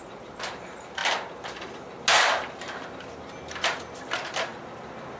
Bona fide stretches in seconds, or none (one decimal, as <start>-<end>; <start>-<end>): 0.0-5.2